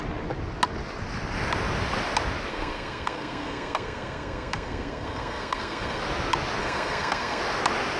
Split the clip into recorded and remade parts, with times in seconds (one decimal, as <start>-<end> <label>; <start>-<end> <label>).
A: 0.0-2.5 recorded; 2.5-6.0 remade; 6.0-6.6 recorded; 6.6-7.4 remade; 7.4-8.0 recorded